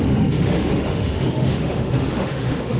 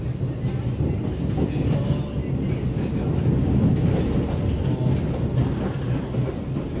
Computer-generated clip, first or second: first